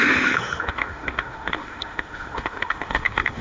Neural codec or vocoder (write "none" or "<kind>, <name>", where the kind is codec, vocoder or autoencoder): autoencoder, DAC-VAE